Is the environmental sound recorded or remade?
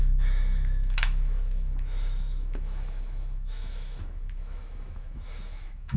remade